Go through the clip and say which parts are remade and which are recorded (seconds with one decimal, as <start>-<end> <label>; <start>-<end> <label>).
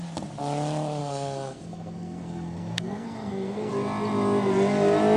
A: 0.0-1.0 recorded; 1.0-3.7 remade; 3.7-5.2 recorded